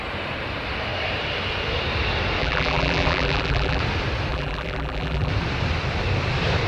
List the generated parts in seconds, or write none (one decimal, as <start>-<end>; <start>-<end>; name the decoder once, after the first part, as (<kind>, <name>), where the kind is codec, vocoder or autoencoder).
2.4-3.8 (vocoder, BigVGAN v2); 4.3-5.3